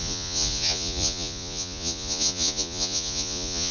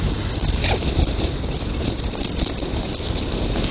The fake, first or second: first